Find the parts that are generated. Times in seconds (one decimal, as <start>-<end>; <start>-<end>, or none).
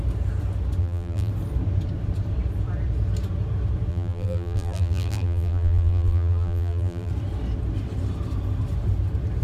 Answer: 0.8-1.3; 3.9-7.1